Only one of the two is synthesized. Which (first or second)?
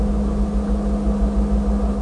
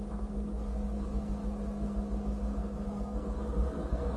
second